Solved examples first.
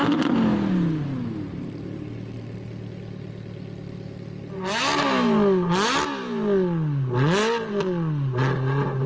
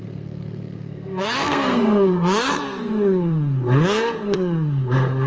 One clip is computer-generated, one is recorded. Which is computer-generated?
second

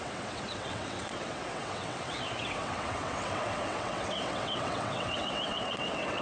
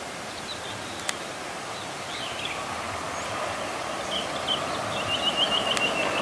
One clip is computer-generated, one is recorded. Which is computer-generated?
first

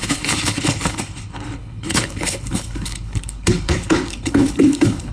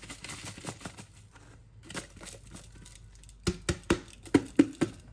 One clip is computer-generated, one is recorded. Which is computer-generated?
first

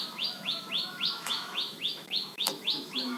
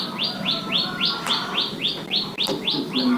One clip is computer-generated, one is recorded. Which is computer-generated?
first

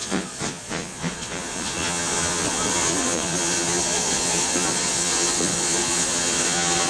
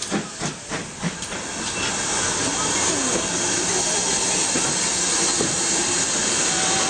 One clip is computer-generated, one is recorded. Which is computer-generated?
first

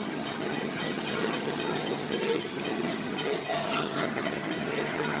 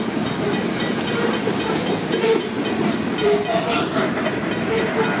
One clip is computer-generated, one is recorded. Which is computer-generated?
first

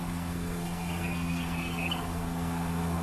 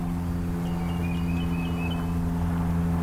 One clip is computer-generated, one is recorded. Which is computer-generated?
first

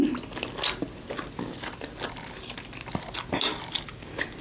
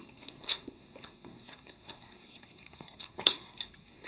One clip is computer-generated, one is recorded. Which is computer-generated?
second